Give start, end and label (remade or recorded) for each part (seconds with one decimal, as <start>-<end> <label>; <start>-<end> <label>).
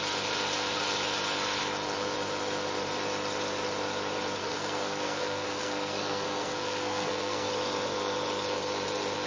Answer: 0.0-4.4 recorded; 4.4-7.5 remade; 7.5-9.3 recorded